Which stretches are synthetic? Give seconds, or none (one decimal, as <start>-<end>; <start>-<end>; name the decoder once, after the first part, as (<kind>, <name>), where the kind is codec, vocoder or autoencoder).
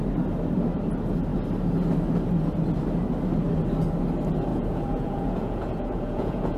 4.5-6.6 (vocoder, Vocos)